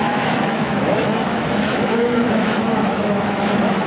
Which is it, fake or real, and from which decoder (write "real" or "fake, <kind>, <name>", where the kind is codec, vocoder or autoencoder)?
fake, autoencoder, DAC-VAE